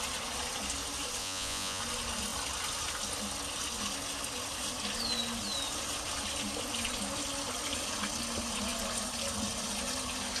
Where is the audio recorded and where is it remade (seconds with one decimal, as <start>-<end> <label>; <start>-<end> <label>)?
0.0-1.2 recorded; 1.2-1.8 remade; 1.8-10.4 recorded